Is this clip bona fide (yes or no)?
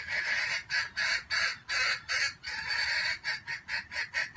yes